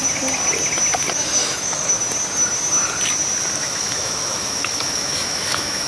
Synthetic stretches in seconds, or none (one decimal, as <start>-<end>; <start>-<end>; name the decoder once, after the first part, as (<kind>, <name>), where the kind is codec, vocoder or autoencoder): 1.4-1.9 (autoencoder, DAC-VAE); 3.6-5.9